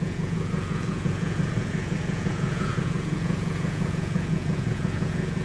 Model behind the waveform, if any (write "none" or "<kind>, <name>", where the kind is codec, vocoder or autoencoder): vocoder, Vocos